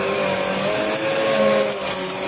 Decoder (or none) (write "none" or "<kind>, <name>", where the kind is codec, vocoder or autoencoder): none